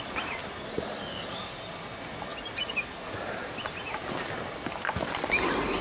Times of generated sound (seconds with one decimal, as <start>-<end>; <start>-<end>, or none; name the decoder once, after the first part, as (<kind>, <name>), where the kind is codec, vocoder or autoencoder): 0.0-5.8 (vocoder, BigVGAN v2)